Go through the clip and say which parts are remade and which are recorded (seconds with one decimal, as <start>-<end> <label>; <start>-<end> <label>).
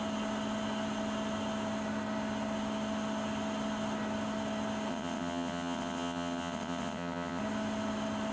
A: 0.0-4.9 recorded; 4.9-7.4 remade; 7.4-8.3 recorded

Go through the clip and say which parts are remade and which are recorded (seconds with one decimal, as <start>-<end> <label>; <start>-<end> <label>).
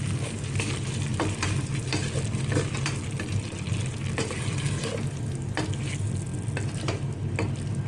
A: 0.0-1.1 recorded; 1.1-4.8 remade; 4.8-7.9 recorded